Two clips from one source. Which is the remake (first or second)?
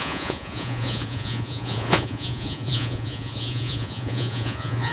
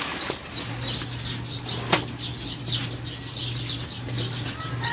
first